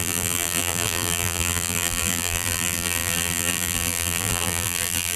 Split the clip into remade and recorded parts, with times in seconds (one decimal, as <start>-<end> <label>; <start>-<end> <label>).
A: 0.0-5.2 remade